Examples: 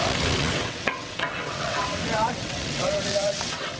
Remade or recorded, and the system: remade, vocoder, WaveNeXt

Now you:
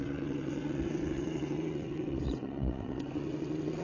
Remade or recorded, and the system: remade, vocoder, WaveNeXt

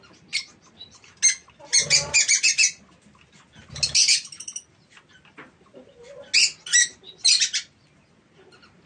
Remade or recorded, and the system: recorded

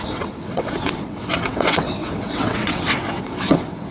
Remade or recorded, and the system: remade, vocoder, WaveNeXt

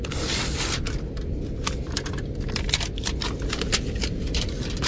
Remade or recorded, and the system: recorded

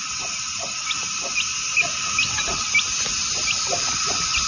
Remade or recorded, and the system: recorded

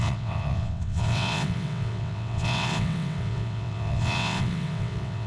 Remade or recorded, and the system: remade, vocoder, WaveNeXt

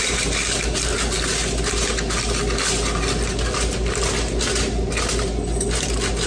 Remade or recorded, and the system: recorded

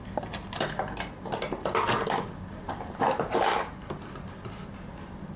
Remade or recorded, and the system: recorded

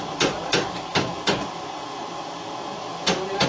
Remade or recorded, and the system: recorded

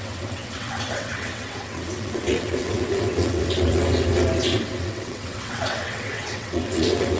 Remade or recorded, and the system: remade, vocoder, WaveNeXt